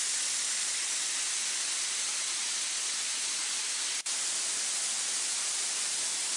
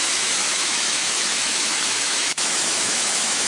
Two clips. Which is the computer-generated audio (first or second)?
second